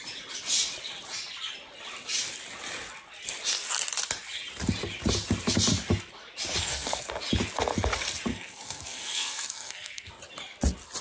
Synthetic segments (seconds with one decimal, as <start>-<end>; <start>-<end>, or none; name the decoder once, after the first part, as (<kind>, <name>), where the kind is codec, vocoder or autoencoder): 6.6-7.1 (codec, SNAC); 8.3-10.1